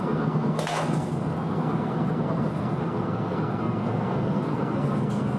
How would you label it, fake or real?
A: fake